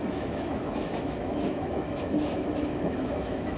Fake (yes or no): yes